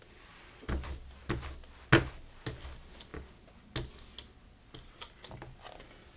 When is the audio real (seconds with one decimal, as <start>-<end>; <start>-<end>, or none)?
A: 0.0-6.2